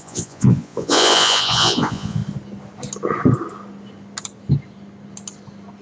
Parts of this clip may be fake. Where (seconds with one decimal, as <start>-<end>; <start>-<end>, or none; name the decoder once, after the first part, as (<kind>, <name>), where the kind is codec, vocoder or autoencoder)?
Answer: 0.0-2.2 (vocoder, Vocos)